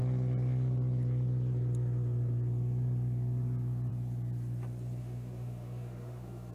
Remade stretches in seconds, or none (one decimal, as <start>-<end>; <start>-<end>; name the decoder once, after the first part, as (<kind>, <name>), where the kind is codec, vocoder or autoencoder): 5.0-6.5 (autoencoder, DAC-VAE)